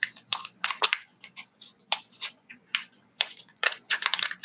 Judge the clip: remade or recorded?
remade